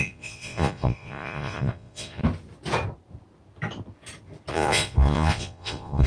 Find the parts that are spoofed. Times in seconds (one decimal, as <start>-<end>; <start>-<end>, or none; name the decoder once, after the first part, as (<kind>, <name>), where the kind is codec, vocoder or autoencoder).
0.0-2.2 (vocoder, Vocos); 4.5-6.1